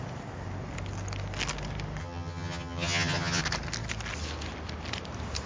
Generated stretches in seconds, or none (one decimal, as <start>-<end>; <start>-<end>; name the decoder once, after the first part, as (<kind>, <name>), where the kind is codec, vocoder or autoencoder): 2.0-3.4 (vocoder, HiFi-GAN)